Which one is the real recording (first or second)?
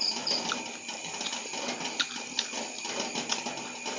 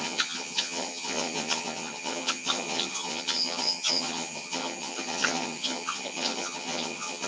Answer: first